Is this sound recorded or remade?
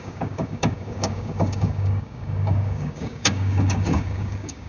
remade